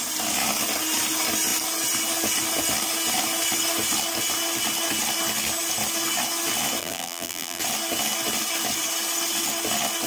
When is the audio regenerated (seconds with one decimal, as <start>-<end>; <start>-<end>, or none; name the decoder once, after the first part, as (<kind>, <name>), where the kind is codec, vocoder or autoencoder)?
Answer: 6.8-7.6 (vocoder, BigVGAN v2)